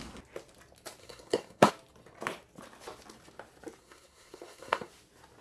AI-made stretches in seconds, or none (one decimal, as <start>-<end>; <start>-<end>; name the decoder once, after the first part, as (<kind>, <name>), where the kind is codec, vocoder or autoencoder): 1.0-1.7 (codec, SNAC); 3.8-4.9